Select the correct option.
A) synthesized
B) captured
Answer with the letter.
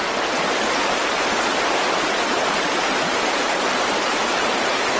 A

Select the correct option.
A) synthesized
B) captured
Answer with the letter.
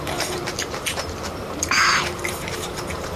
A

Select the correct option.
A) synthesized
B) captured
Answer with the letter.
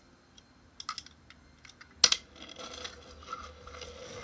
B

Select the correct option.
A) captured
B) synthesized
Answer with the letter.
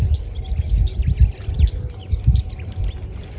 A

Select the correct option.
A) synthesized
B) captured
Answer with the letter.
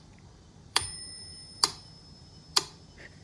A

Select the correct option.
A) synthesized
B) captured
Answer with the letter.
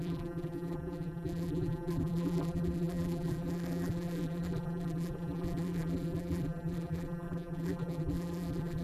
A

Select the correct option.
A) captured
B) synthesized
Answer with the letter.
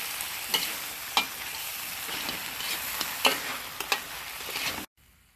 A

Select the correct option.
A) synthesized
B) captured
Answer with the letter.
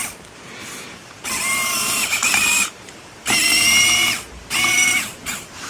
A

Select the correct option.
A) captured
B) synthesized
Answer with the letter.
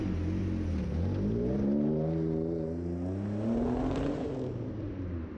A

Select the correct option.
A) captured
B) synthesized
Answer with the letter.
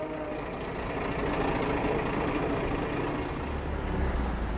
A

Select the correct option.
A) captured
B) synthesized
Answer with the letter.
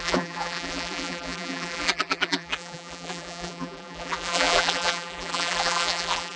B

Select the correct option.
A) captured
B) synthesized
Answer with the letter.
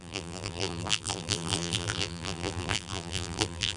B